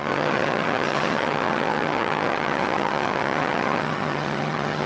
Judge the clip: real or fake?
fake